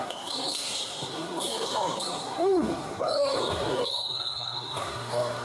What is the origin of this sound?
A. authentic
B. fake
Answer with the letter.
B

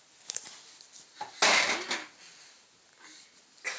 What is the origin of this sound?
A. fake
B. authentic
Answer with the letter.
B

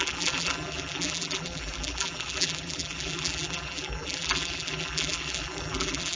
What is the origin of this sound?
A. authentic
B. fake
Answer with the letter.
B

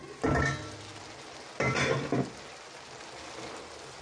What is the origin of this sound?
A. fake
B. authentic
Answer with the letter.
B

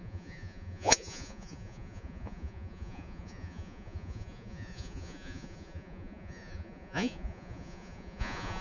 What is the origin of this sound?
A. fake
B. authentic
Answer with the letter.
A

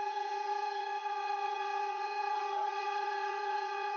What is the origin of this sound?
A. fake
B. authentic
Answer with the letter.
A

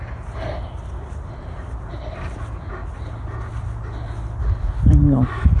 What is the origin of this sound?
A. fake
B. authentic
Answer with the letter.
B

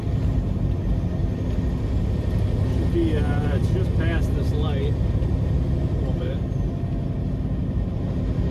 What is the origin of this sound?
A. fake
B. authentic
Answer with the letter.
B